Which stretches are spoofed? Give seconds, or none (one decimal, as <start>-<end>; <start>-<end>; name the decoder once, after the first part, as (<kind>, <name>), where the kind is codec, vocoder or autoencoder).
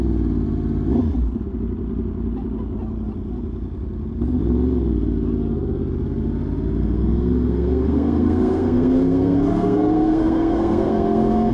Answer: 6.8-11.5 (codec, SNAC)